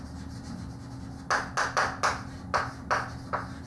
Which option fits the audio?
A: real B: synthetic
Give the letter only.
A